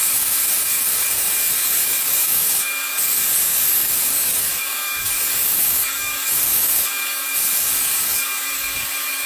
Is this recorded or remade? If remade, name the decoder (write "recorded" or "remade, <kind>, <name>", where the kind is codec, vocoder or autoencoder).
remade, codec, DAC